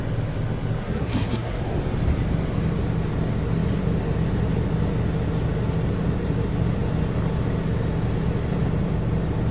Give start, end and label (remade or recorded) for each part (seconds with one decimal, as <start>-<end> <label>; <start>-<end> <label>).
0.0-0.8 recorded; 0.8-1.6 remade; 1.6-9.5 recorded